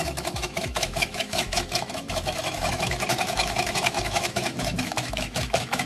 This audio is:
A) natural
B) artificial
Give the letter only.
B